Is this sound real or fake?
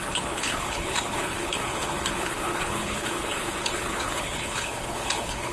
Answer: fake